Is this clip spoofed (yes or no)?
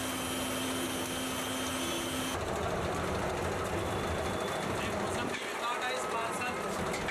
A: no